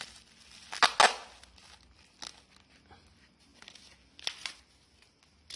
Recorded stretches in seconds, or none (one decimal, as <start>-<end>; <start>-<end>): 0.0-5.6